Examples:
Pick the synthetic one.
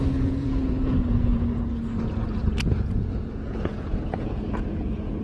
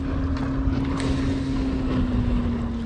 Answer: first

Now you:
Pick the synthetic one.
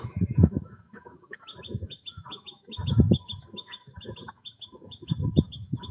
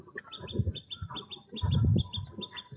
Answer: first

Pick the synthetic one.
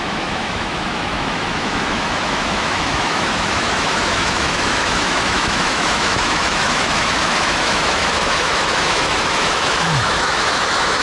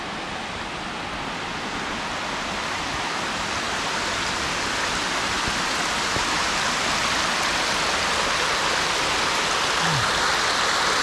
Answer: first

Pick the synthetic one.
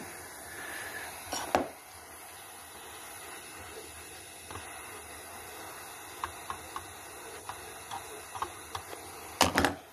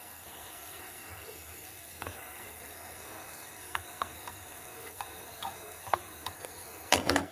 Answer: second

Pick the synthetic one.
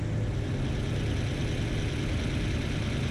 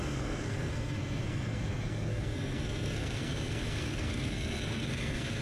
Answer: second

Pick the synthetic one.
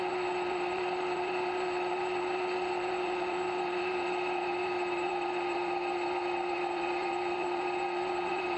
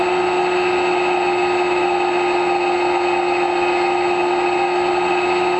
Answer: first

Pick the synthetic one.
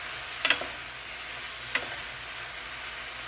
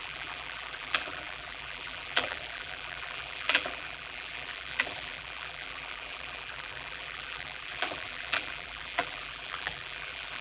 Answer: second